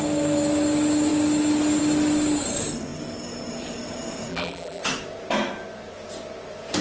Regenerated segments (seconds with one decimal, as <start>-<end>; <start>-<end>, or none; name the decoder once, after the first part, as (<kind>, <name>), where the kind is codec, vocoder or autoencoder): 4.3-4.8 (vocoder, BigVGAN v2)